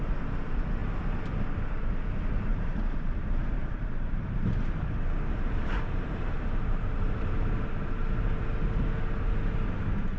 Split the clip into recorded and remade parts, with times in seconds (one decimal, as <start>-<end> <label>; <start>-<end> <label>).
0.0-2.5 recorded; 2.5-7.6 remade; 7.6-10.2 recorded